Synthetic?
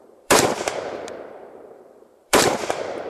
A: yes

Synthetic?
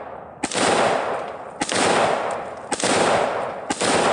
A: no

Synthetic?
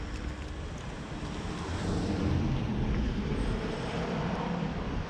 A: yes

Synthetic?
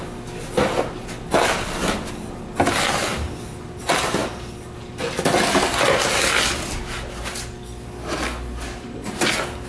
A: no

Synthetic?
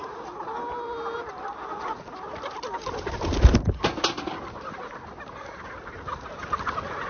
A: no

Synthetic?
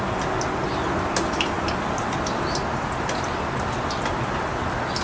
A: no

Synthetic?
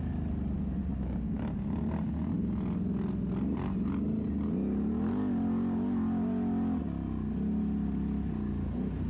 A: no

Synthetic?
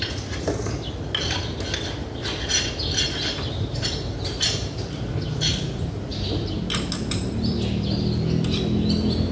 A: no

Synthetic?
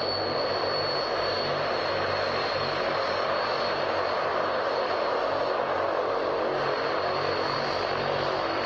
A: no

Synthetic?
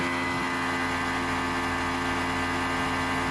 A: no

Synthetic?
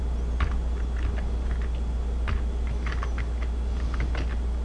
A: no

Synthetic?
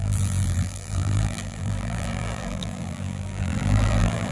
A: yes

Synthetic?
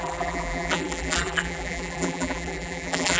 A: yes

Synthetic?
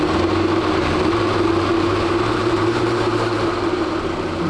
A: yes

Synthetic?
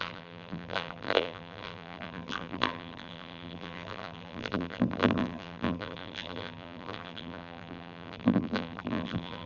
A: yes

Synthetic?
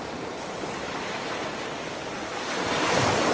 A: no